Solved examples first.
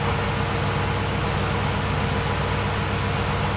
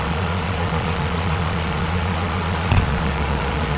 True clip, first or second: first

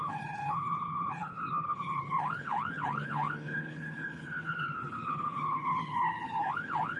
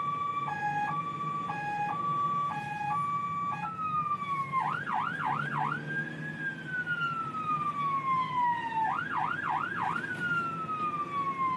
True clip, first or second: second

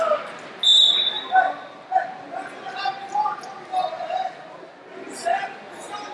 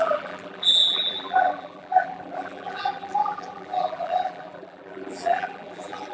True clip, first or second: first